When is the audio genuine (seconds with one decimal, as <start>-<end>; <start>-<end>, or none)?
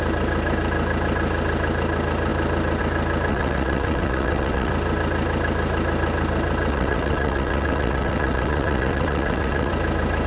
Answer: 0.0-3.3; 4.7-6.7; 9.7-10.3